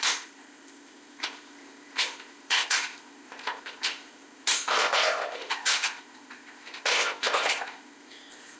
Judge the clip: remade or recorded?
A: remade